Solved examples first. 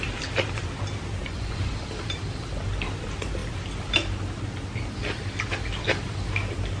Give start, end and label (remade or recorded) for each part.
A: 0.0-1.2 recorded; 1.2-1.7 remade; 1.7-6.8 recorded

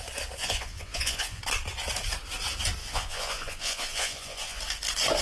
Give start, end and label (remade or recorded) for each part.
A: 0.0-0.4 recorded; 0.4-1.4 remade; 1.4-2.8 recorded; 2.8-4.6 remade; 4.6-5.2 recorded

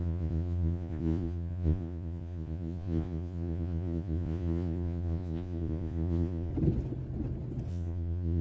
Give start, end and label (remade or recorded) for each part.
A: 0.0-6.5 remade; 6.5-7.7 recorded; 7.7-8.4 remade

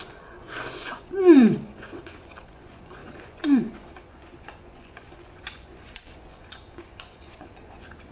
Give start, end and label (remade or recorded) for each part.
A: 0.0-8.1 remade

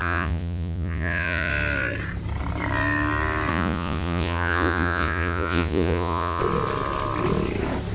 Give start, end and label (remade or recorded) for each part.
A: 0.0-1.5 remade; 1.5-3.5 recorded; 3.5-6.4 remade; 6.4-7.9 recorded

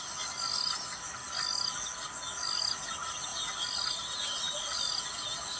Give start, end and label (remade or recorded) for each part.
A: 0.0-5.6 recorded

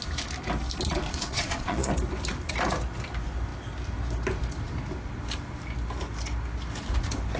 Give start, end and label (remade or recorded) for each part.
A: 0.0-1.1 recorded; 1.1-1.9 remade; 1.9-7.4 recorded

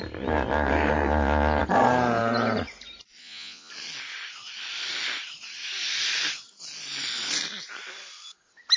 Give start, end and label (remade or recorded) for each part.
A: 0.0-3.2 recorded; 3.2-3.7 remade; 3.7-8.8 recorded